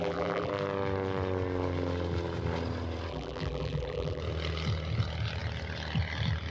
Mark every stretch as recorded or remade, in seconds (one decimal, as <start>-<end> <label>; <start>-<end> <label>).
0.0-0.5 remade; 0.5-3.1 recorded; 3.1-4.2 remade; 4.2-6.5 recorded